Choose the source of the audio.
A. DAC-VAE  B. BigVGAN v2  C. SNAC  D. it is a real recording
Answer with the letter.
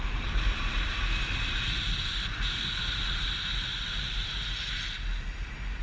D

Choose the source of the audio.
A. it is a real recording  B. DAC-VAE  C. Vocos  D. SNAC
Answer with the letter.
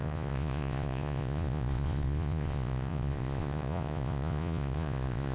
C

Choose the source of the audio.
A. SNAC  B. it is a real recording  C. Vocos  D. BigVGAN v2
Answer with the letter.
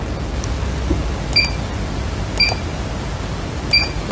B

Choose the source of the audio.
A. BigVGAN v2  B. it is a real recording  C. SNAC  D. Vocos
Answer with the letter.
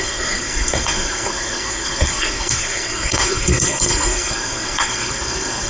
C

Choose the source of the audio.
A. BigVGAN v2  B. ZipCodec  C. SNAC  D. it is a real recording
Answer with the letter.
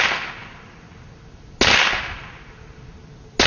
D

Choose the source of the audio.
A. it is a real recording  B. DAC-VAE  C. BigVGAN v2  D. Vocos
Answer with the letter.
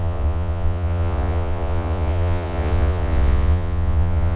D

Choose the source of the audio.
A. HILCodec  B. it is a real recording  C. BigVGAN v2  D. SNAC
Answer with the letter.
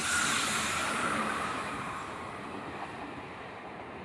C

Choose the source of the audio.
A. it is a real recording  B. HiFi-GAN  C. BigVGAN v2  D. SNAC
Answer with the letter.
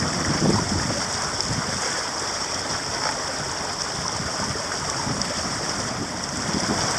A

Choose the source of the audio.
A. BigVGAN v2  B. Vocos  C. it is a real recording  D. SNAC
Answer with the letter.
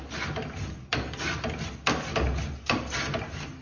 C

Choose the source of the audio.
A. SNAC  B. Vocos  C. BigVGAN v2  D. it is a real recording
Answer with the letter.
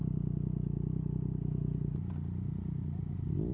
D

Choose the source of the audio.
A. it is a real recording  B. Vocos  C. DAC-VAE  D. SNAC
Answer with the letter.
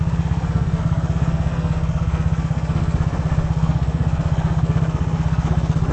D